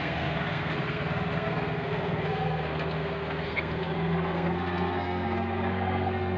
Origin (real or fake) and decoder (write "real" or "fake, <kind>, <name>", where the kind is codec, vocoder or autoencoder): fake, codec, SNAC